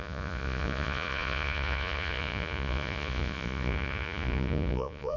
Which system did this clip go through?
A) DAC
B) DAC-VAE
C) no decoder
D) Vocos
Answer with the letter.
D